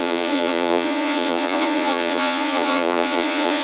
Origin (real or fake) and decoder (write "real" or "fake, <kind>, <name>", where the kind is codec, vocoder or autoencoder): fake, vocoder, Vocos